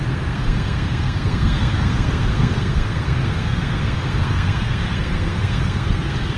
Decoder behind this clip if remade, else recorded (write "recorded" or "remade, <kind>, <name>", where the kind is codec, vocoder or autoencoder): remade, codec, SNAC